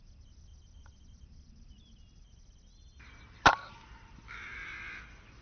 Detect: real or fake real